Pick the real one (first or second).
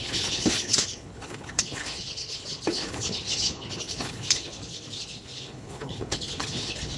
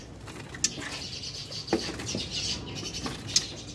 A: second